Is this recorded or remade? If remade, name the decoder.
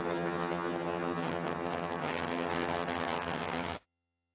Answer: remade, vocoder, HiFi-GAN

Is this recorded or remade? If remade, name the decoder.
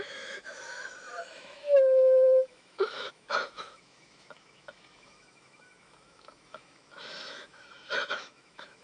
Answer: remade, autoencoder, DAC-VAE